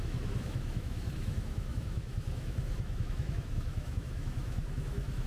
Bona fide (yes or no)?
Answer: no